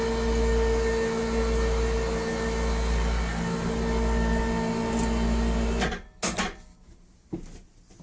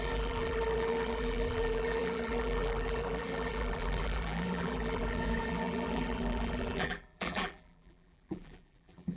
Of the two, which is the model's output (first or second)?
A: second